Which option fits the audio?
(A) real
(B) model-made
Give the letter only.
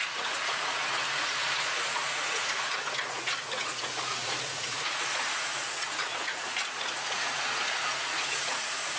B